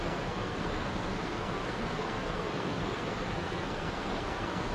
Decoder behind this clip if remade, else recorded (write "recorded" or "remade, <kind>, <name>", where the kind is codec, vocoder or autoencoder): remade, codec, SNAC